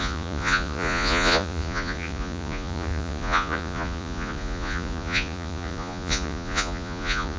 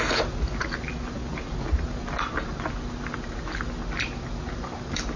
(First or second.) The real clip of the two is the second